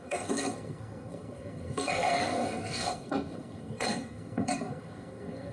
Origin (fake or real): fake